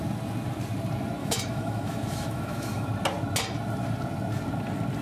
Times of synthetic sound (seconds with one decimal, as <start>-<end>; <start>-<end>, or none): 1.2-2.9